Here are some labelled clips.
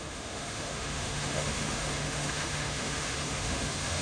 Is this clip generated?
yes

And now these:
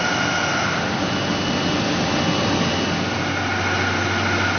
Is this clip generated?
no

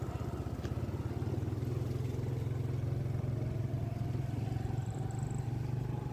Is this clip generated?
no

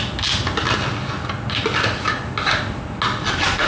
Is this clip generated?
no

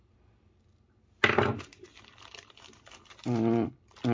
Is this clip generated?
no